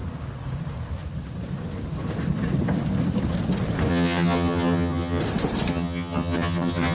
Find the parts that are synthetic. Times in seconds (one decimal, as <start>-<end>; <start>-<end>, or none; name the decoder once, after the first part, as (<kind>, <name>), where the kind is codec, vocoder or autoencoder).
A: 3.9-5.2 (vocoder, HiFi-GAN); 5.7-6.9